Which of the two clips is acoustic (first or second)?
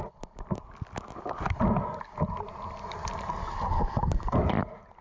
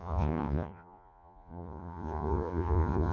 first